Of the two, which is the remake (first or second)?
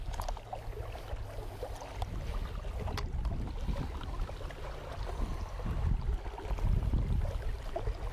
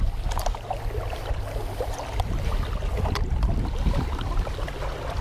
second